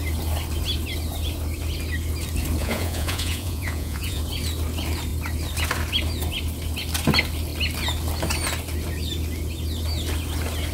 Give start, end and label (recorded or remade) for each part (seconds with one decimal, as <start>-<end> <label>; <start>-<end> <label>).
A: 0.0-2.6 recorded; 2.6-4.2 remade; 4.2-10.7 recorded